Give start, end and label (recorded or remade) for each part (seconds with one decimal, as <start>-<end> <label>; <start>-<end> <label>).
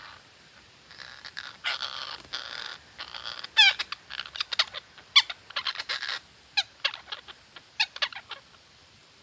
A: 0.0-9.2 recorded